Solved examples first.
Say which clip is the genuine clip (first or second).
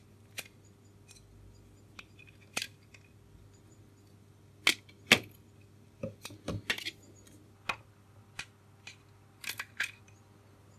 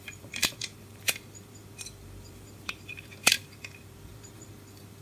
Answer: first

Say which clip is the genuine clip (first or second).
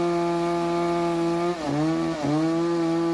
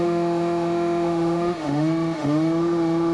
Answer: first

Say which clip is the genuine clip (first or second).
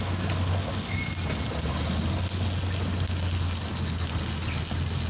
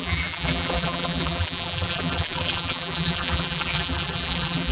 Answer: first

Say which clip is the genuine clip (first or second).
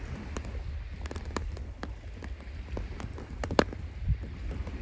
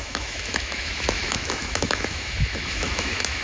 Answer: first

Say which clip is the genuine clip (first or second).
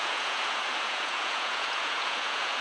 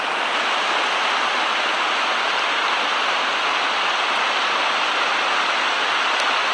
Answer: second